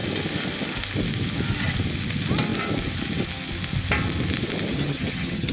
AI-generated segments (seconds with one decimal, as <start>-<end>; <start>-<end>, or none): 4.7-5.5